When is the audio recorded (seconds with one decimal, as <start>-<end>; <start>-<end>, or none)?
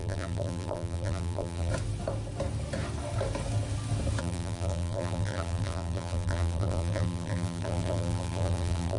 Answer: 1.7-4.2